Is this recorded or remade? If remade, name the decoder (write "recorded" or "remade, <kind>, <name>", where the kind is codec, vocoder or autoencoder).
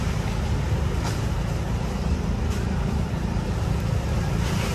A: recorded